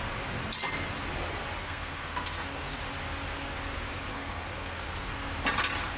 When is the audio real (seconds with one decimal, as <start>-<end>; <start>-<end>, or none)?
0.0-1.6; 2.8-4.1; 5.1-6.0